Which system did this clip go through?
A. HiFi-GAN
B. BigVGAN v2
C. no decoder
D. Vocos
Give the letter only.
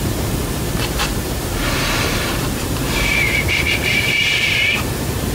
B